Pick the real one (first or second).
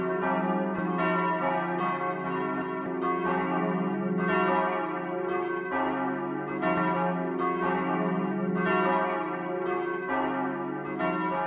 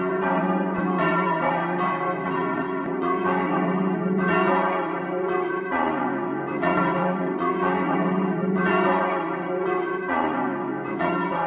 first